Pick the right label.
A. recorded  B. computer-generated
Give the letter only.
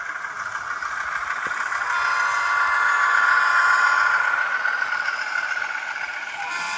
A